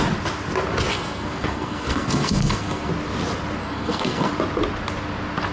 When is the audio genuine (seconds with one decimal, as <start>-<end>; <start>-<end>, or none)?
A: 0.0-0.9; 2.9-3.6; 4.3-5.5